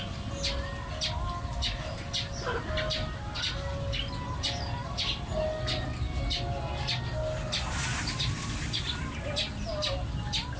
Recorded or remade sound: recorded